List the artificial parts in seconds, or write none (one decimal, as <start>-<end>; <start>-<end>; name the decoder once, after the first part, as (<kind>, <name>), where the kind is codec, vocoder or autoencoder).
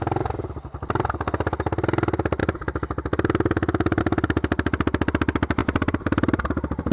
5.6-6.9 (vocoder, BigVGAN v2)